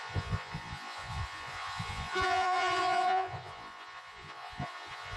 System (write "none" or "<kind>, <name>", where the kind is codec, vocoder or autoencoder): vocoder, Vocos